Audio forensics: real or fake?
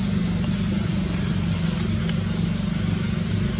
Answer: real